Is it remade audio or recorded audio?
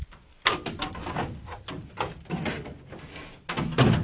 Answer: recorded